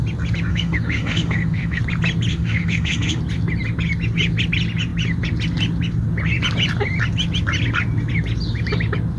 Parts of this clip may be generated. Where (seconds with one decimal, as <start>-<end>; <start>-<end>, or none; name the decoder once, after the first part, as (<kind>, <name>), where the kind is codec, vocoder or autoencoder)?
0.5-1.8 (autoencoder, DAC-VAE); 2.3-3.2